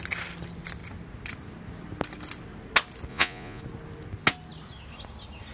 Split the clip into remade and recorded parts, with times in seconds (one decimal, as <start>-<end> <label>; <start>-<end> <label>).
0.0-3.1 recorded; 3.1-3.6 remade; 3.6-5.5 recorded